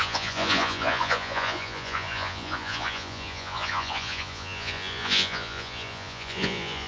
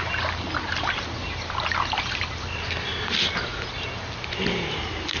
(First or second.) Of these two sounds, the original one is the second